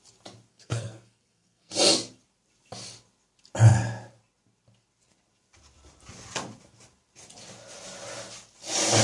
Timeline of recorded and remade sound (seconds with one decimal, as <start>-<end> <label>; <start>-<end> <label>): 0.0-0.5 recorded; 0.5-1.7 remade; 1.7-9.0 recorded

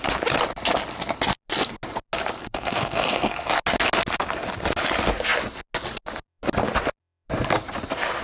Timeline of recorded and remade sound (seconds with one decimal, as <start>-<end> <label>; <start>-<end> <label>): 0.0-2.4 recorded; 2.4-3.5 remade; 3.5-8.2 recorded